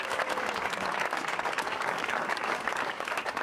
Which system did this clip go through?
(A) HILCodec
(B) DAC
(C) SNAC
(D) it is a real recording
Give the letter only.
B